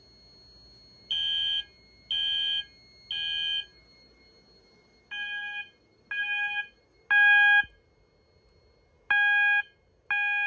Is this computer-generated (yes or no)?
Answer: no